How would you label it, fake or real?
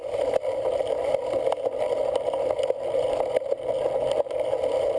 real